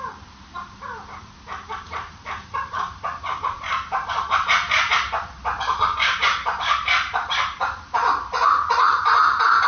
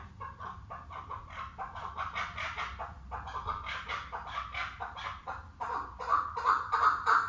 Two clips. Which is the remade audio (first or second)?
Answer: first